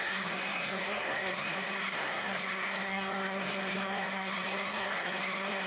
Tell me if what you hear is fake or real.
fake